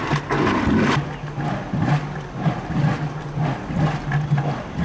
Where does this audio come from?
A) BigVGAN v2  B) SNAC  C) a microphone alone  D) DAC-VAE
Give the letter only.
C